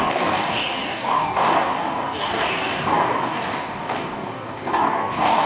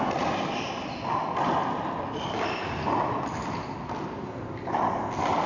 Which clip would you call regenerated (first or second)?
first